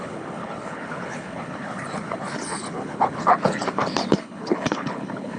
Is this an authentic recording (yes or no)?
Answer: no